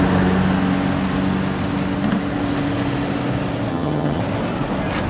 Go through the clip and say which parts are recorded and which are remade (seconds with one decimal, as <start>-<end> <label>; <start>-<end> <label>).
0.0-3.7 recorded; 3.7-4.2 remade; 4.2-5.1 recorded